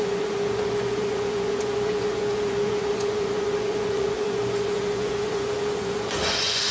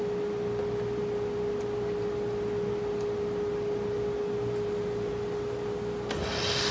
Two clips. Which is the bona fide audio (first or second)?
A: second